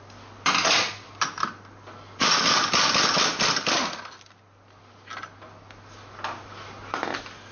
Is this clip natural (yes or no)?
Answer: yes